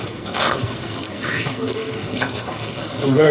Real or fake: fake